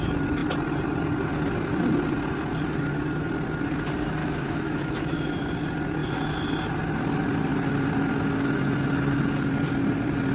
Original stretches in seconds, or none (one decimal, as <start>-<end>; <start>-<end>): 0.0-4.2; 5.5-10.3